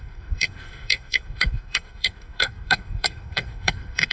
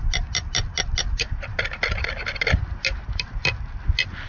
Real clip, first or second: second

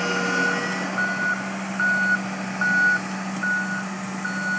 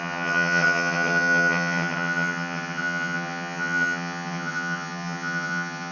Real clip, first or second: first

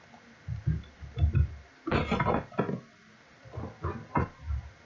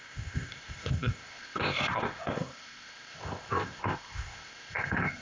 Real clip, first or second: first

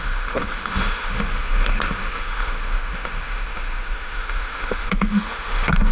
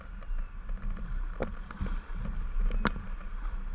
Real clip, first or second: second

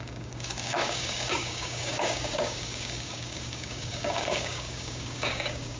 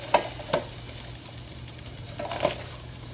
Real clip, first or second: second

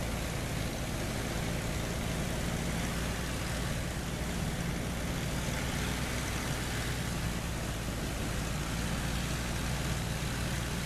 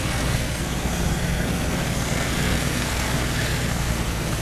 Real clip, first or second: first